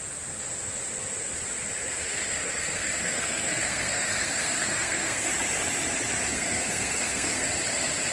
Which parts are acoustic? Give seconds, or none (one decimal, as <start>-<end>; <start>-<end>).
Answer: 0.0-2.1; 5.3-6.3; 7.5-8.1